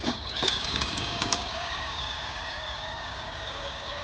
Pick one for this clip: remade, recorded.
remade